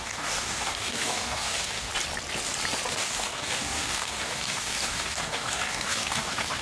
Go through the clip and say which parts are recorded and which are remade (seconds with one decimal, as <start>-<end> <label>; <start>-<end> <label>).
0.0-1.9 remade; 1.9-2.9 recorded; 2.9-6.6 remade